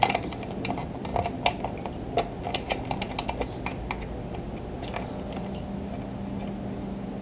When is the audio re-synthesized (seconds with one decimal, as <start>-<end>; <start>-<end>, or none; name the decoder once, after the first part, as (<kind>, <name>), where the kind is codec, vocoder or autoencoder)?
none

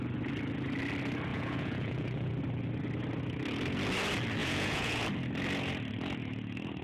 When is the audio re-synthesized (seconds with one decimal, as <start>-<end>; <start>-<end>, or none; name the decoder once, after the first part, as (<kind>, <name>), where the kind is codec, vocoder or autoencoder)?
1.3-2.3 (vocoder, Vocos); 4.4-5.0

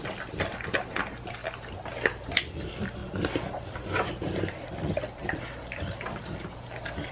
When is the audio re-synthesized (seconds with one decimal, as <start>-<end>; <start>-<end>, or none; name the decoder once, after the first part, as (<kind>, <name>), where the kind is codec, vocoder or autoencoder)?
none

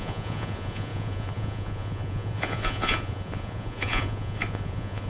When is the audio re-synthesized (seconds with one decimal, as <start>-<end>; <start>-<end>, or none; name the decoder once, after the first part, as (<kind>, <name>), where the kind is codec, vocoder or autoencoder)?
0.0-5.1 (vocoder, Vocos)

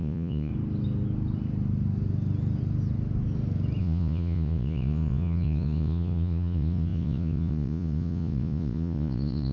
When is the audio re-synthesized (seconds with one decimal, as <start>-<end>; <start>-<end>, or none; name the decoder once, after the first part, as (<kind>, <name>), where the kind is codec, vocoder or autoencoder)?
0.0-0.5 (vocoder, Vocos); 3.8-9.5

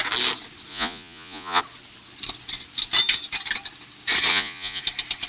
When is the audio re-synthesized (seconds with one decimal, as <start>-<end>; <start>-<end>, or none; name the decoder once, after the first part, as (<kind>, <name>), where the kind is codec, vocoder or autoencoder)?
0.7-1.6 (vocoder, Vocos); 4.3-4.8